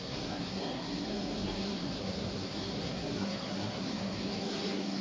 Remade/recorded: remade